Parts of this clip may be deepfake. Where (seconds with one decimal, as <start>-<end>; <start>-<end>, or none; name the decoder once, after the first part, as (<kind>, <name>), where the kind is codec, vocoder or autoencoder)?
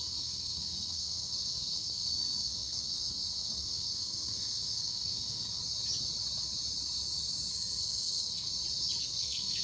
0.0-5.6 (codec, SNAC); 7.5-8.5; 9.0-9.6